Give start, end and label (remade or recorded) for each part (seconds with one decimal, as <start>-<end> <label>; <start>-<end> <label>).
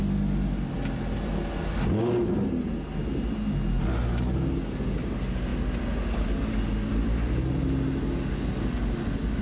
0.0-9.4 recorded